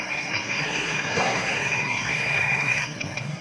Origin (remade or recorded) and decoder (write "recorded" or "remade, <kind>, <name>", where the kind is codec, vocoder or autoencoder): remade, codec, SNAC